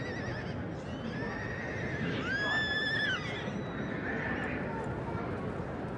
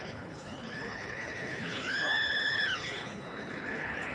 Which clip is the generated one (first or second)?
second